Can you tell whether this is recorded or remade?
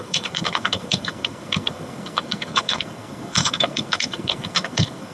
remade